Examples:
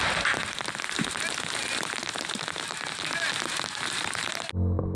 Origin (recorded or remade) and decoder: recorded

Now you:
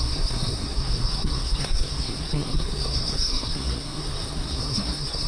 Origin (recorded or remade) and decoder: remade, codec, SNAC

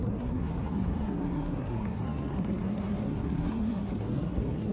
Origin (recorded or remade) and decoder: remade, codec, SNAC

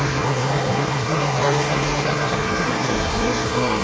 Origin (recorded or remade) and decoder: remade, codec, SNAC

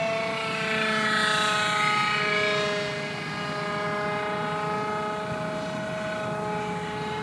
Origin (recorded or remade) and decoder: recorded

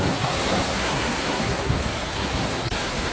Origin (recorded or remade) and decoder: remade, codec, SNAC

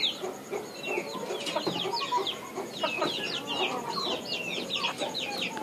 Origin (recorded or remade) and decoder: recorded